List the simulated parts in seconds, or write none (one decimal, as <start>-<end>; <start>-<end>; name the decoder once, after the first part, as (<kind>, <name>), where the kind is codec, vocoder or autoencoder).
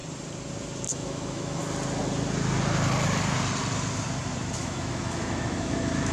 0.9-1.6 (autoencoder, DAC-VAE); 4.6-6.1